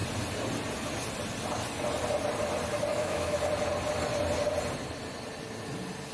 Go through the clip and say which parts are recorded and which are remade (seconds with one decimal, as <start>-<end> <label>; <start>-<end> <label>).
0.0-2.9 recorded; 2.9-3.4 remade; 3.4-6.1 recorded